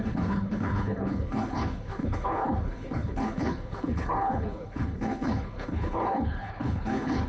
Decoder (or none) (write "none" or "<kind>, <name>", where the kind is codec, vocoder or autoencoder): codec, HILCodec